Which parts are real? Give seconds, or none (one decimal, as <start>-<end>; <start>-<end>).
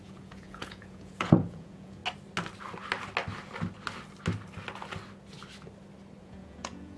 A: 2.0-6.2